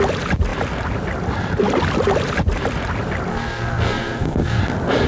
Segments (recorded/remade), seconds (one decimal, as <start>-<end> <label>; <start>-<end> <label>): 0.0-3.3 recorded; 3.3-4.6 remade; 4.6-5.1 recorded